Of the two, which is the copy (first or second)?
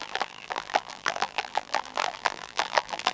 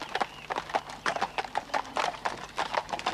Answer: first